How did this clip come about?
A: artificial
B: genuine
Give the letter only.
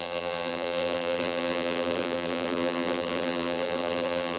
A